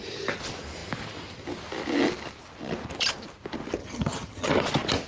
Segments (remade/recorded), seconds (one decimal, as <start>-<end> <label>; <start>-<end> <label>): 0.0-3.8 recorded; 3.8-4.5 remade; 4.5-5.1 recorded

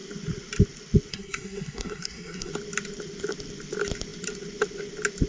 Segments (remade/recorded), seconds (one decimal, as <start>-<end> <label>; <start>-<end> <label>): 0.0-1.1 recorded; 1.1-2.5 remade; 2.5-5.3 recorded

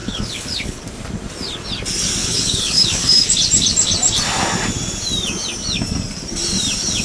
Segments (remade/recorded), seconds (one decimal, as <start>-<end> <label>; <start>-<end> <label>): 0.0-0.8 remade; 0.8-2.2 recorded; 2.2-3.3 remade; 3.3-7.0 recorded

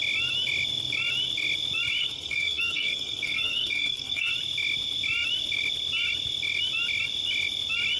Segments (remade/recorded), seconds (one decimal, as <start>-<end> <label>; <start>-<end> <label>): 0.0-2.0 recorded; 2.0-4.3 remade; 4.3-8.0 recorded

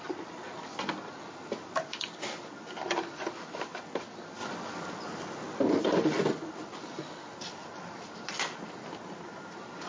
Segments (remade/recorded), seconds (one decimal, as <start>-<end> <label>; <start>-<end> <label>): 0.0-9.9 recorded

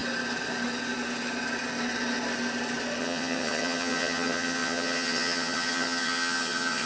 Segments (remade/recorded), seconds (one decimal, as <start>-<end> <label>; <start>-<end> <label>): 0.0-3.0 recorded; 3.0-6.9 remade

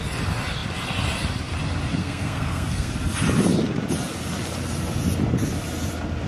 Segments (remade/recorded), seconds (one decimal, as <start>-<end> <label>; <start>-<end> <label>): 0.0-2.0 recorded; 2.0-2.9 remade; 2.9-6.3 recorded